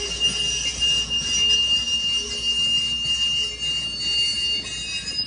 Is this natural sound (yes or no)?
yes